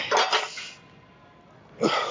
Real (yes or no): yes